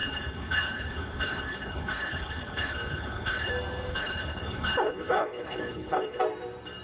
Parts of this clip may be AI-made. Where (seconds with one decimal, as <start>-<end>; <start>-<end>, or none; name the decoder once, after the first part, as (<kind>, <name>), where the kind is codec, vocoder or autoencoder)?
0.0-3.5 (codec, HILCodec); 3.9-6.2

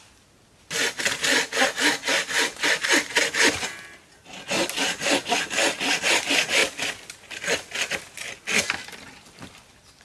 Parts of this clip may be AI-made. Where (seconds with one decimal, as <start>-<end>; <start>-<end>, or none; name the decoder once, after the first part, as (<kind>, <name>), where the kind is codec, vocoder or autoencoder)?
none

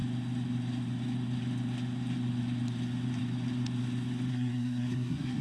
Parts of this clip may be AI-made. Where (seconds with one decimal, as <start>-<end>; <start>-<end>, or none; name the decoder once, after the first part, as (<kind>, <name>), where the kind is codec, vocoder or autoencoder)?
4.3-5.4 (codec, SNAC)

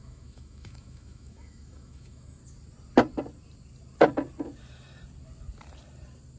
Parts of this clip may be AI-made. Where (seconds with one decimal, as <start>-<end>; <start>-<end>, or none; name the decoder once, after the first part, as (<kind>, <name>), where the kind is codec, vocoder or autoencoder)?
0.0-2.4 (autoencoder, DAC-VAE)

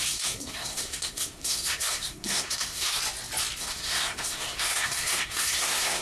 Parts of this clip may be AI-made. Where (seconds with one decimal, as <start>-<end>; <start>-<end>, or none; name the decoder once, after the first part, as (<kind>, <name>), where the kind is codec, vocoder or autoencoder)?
0.0-3.0 (codec, SNAC); 3.6-6.0

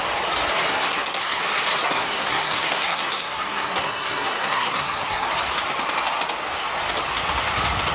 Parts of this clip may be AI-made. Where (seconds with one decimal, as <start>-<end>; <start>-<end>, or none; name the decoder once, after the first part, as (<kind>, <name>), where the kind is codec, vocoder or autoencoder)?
0.7-1.4 (codec, SNAC); 1.8-5.3